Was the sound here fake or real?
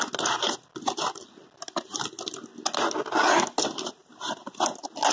real